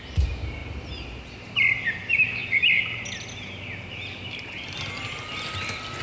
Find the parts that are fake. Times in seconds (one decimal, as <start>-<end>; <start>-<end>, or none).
0.6-1.2